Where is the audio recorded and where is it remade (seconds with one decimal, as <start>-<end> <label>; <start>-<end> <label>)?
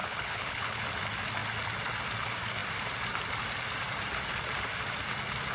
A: 0.0-0.8 remade; 0.8-5.5 recorded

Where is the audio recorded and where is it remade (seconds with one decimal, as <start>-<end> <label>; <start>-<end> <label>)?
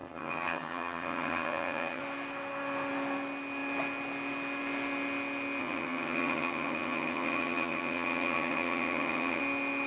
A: 0.0-2.0 remade; 2.0-5.6 recorded; 5.6-9.4 remade; 9.4-9.9 recorded